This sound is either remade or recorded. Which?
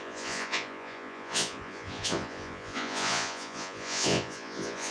remade